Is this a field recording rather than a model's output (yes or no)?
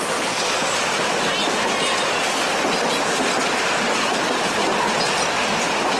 yes